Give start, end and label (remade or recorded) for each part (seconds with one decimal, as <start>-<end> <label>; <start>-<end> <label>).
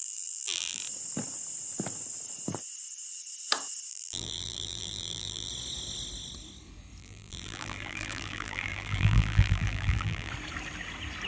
0.0-0.8 remade; 0.8-3.9 recorded; 3.9-5.5 remade; 5.5-7.0 recorded; 7.0-10.3 remade; 10.3-11.3 recorded